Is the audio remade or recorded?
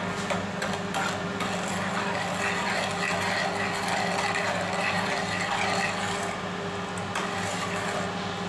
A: recorded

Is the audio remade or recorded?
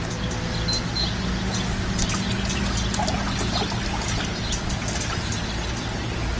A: recorded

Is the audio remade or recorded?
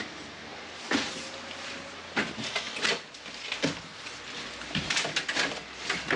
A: recorded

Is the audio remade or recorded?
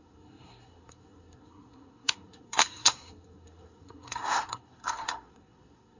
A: remade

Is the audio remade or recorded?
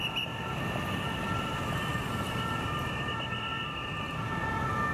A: recorded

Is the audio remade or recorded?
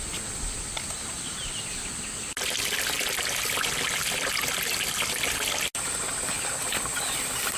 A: recorded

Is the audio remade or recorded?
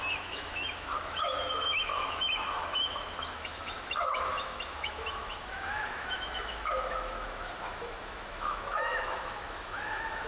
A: remade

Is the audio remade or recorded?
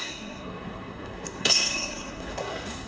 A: remade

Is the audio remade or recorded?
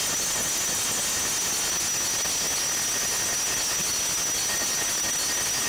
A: recorded